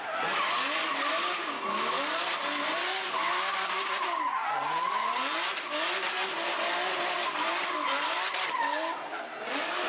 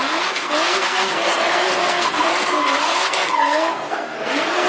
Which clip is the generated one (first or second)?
second